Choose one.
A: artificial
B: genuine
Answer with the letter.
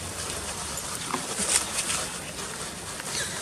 B